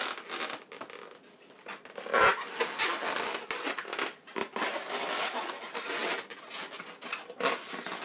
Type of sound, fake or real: real